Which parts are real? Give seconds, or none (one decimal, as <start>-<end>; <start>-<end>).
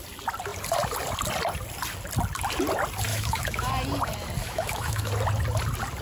0.0-3.1; 3.7-4.4; 5.1-6.0